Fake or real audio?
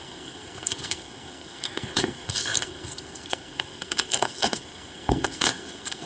fake